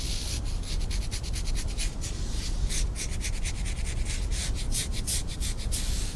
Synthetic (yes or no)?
no